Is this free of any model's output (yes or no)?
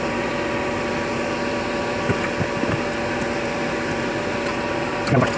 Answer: yes